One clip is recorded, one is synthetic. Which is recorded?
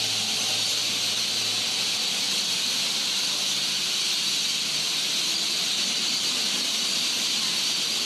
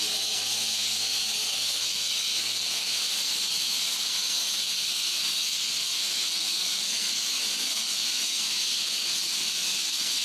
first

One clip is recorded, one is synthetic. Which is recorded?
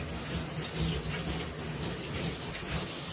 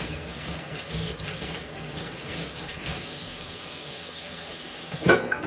first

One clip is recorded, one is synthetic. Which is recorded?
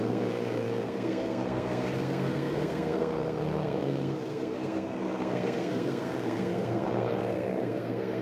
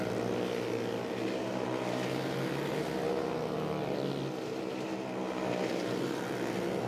second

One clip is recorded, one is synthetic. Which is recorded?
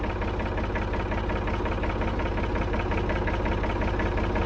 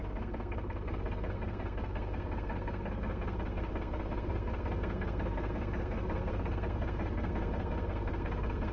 first